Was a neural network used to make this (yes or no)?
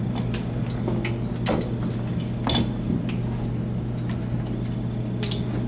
no